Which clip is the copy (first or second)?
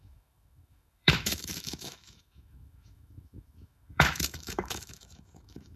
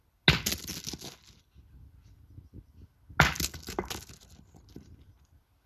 first